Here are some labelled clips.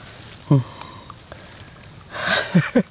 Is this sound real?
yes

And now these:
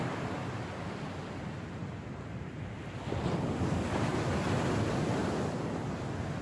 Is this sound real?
yes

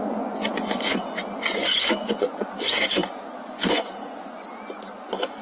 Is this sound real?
no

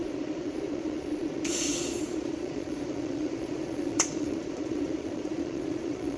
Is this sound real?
no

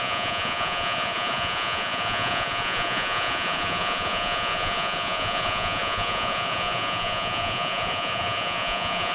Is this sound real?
no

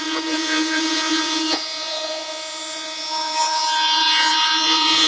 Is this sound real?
no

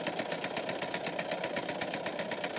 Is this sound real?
yes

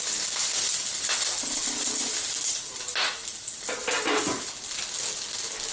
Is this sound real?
yes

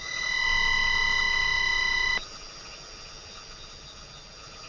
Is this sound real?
yes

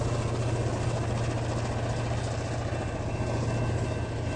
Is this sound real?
yes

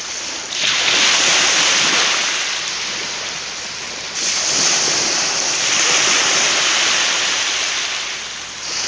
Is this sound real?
yes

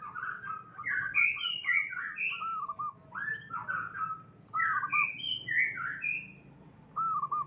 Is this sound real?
yes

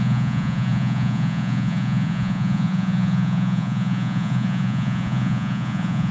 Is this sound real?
no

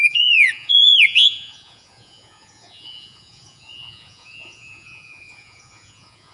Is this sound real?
no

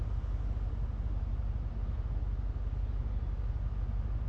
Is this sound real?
yes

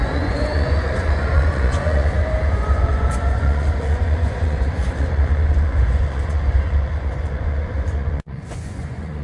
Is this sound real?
no